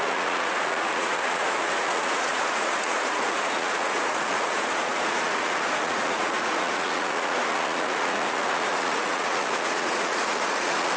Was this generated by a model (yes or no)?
yes